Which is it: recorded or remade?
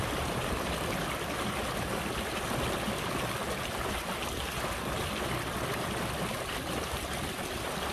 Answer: recorded